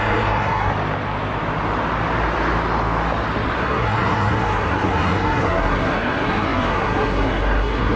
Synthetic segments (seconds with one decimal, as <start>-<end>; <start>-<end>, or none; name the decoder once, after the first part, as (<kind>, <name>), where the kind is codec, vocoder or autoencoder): 0.0-0.7 (codec, SNAC); 3.6-8.0